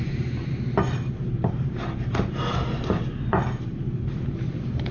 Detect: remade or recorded remade